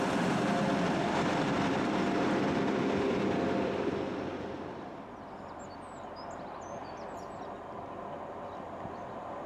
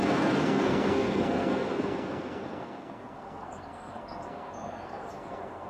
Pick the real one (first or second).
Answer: first